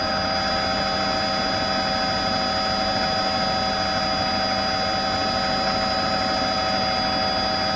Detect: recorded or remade recorded